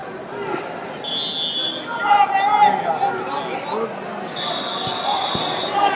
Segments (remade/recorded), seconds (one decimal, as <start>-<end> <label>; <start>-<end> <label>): 0.0-6.0 recorded